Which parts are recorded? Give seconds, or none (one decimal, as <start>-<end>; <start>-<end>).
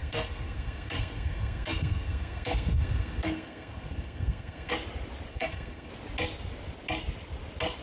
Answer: 4.7-5.3; 5.9-7.8